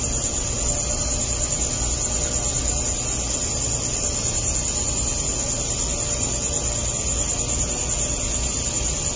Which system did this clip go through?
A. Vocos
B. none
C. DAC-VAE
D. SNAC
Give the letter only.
B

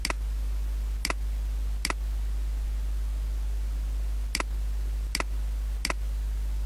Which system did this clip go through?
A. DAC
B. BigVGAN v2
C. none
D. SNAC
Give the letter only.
C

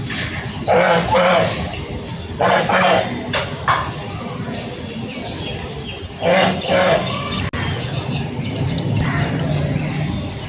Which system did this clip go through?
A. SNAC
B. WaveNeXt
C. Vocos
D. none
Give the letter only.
D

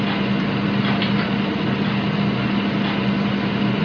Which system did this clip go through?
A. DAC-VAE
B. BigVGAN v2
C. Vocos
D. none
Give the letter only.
D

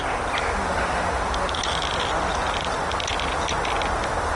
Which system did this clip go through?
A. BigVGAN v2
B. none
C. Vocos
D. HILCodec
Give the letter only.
B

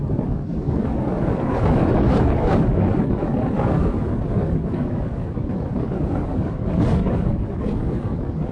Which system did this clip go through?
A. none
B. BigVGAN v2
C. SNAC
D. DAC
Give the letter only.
D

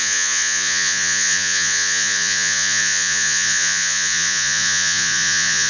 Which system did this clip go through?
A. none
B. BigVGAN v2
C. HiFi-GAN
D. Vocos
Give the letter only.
D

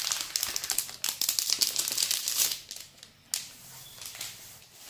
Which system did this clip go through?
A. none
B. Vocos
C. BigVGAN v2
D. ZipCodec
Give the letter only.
A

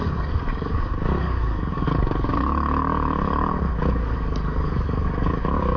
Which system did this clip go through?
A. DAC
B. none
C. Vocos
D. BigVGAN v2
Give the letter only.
A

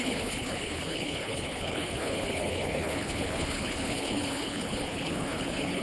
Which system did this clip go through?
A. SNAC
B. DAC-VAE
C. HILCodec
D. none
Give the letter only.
C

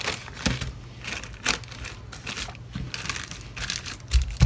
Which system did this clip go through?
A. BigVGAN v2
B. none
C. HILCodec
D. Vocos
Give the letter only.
B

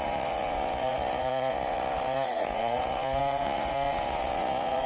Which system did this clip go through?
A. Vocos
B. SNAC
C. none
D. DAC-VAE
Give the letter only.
A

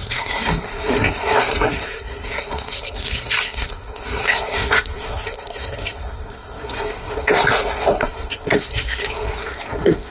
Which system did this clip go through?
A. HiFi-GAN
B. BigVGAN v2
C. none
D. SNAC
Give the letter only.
D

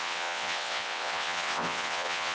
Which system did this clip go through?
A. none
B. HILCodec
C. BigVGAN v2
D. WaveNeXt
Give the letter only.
D